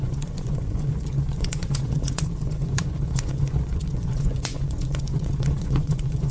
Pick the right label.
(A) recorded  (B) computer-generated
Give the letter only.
B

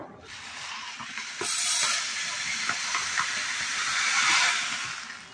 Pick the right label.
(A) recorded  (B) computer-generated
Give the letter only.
A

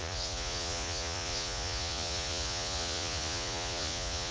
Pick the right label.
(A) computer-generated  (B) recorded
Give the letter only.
A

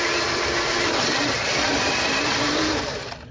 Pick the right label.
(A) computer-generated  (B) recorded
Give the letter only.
B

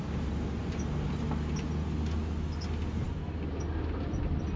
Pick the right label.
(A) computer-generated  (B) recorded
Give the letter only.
B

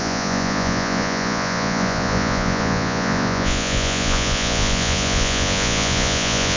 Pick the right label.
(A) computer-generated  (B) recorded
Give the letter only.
A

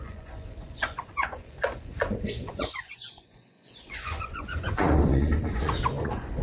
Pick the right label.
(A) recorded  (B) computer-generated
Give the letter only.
B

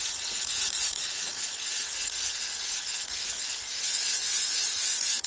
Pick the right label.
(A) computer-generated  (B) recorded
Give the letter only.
A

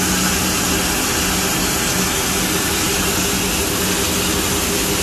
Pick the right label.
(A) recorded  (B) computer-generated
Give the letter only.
A